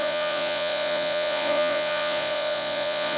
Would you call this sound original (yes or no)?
no